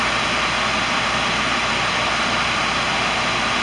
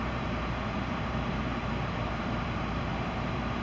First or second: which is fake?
second